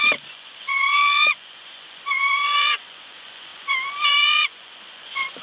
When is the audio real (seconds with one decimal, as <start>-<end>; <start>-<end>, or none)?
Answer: none